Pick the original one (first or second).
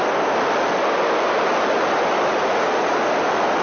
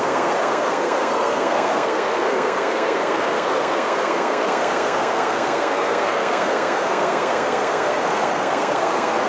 first